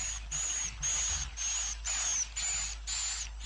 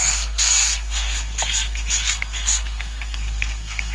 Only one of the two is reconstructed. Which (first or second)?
second